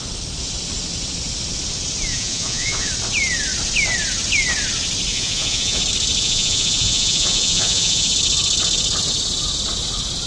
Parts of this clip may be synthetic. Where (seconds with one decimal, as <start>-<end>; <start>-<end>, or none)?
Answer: 2.1-2.9; 5.1-5.8; 6.2-8.1